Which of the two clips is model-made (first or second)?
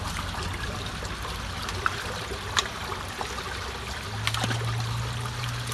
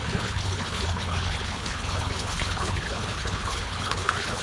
second